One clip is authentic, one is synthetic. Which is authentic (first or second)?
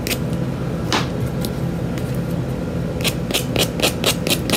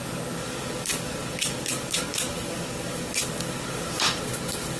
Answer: first